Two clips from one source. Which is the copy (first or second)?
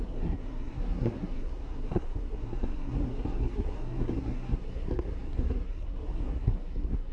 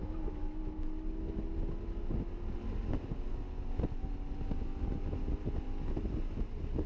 first